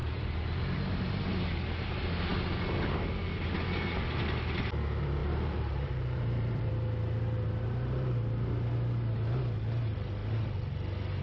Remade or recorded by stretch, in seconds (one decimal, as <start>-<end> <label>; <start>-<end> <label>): 0.0-1.2 remade; 1.2-5.2 recorded; 5.2-6.7 remade; 6.7-10.2 recorded; 10.2-10.7 remade; 10.7-11.2 recorded